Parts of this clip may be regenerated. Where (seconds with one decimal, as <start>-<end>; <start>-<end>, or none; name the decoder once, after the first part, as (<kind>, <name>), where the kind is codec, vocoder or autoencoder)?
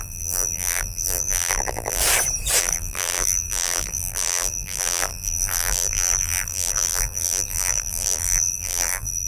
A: 0.0-2.0 (vocoder, BigVGAN v2); 2.6-9.3